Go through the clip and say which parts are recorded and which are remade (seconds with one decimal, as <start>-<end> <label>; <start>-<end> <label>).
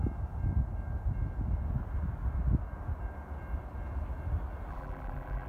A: 0.0-4.7 recorded; 4.7-5.5 remade